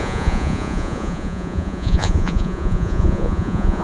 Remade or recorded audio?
remade